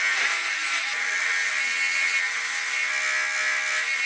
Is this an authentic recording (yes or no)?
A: yes